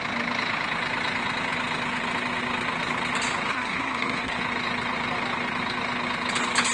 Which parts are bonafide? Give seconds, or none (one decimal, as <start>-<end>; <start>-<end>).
0.0-3.5; 4.4-6.7